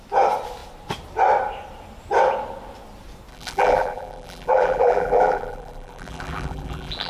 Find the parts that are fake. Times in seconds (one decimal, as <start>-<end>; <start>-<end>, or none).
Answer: 3.3-7.1